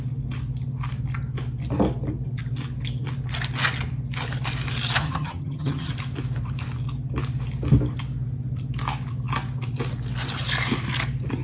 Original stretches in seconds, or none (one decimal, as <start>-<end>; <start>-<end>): 0.0-5.0; 5.9-11.4